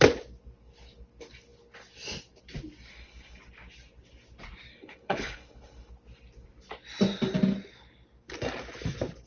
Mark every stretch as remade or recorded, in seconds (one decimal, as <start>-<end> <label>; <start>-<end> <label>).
0.0-2.9 recorded; 2.9-3.4 remade; 3.4-4.7 recorded; 4.7-5.9 remade; 5.9-9.3 recorded